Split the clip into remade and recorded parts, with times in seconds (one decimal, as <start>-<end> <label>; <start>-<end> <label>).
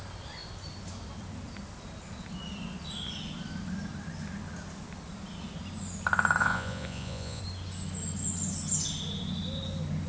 0.0-6.4 recorded; 6.4-7.4 remade; 7.4-10.1 recorded